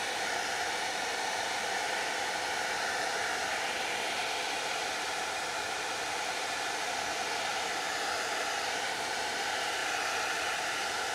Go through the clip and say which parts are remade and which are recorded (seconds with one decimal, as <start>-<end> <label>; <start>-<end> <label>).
0.0-7.5 remade; 7.5-8.4 recorded; 8.4-9.8 remade; 9.8-10.3 recorded; 10.3-11.1 remade